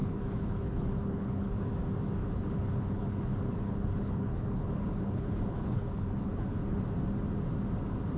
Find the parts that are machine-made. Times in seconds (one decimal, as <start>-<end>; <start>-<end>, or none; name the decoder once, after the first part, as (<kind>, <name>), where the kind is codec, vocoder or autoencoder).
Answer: 0.0-1.7 (codec, HILCodec); 2.2-6.8